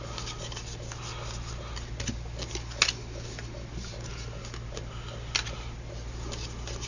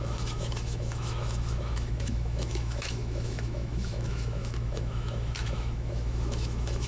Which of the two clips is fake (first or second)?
second